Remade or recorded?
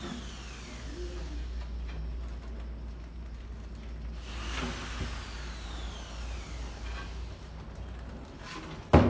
recorded